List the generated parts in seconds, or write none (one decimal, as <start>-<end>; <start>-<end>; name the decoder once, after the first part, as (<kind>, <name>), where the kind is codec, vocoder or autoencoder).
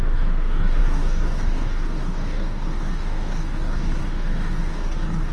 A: 0.0-5.3 (codec, DAC)